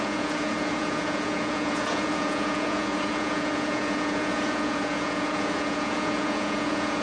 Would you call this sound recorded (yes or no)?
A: no